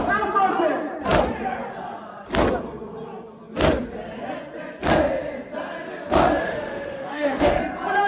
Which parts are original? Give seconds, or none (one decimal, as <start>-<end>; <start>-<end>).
0.0-6.4; 7.6-8.1